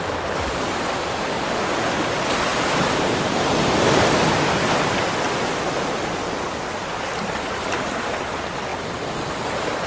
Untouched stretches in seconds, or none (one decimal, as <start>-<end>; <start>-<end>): 0.0-2.5; 4.0-9.9